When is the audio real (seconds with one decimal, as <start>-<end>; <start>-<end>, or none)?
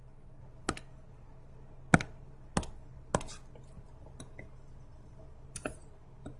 0.0-6.4